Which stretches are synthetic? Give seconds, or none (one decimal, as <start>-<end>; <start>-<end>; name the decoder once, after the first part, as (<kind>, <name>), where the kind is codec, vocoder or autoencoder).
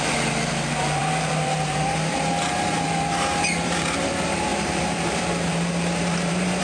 0.0-6.6 (vocoder, BigVGAN v2)